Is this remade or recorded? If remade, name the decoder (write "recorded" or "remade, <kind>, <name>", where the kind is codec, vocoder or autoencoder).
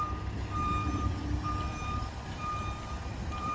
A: remade, vocoder, BigVGAN v2